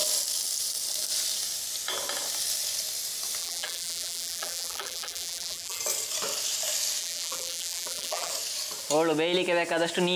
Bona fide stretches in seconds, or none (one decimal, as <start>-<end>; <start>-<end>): 0.0-3.4; 5.8-7.0; 8.3-10.2